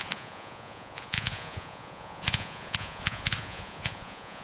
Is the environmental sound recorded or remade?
remade